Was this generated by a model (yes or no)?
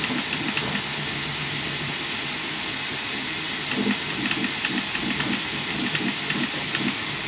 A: no